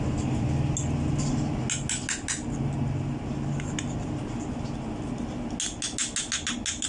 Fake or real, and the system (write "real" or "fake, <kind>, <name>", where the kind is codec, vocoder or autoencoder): real